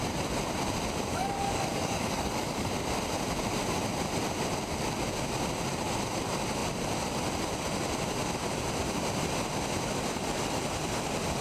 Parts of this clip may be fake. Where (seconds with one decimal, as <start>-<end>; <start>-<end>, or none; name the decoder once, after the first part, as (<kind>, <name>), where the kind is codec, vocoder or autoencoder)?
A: 1.1-2.7 (codec, DAC)